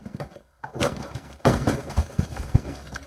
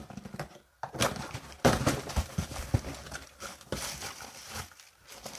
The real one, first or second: second